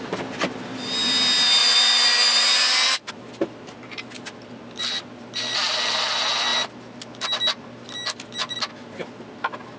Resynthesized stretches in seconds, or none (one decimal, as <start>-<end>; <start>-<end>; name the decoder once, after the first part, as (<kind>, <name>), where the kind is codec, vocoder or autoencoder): 1.6-3.1 (vocoder, BigVGAN v2)